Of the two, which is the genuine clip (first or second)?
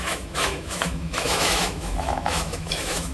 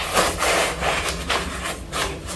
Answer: second